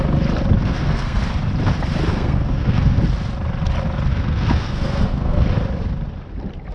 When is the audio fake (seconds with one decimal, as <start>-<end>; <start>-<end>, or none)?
0.6-1.2; 2.1-3.0; 4.1-5.5